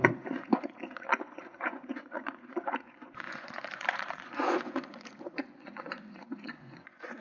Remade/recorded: remade